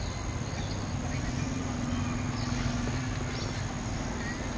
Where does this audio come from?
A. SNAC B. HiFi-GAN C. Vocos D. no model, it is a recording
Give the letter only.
D